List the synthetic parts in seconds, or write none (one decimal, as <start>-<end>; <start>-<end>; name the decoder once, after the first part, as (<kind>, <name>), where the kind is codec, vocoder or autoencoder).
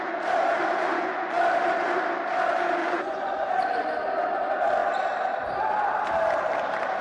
0.6-1.4 (vocoder, Vocos); 2.8-3.5